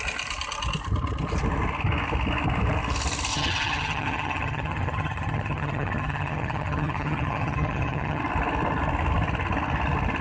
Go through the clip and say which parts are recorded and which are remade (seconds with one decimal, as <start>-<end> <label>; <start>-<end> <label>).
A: 0.0-3.3 recorded; 3.3-8.2 remade; 8.2-10.2 recorded